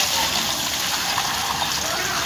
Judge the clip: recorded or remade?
recorded